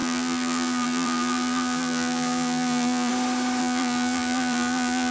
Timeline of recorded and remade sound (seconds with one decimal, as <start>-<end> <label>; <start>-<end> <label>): 0.0-3.1 remade; 3.1-3.6 recorded; 3.6-5.1 remade